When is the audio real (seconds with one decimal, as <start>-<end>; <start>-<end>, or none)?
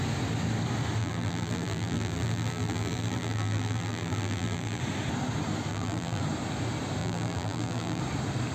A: 0.0-1.0; 4.8-5.7; 6.2-7.0; 8.0-8.5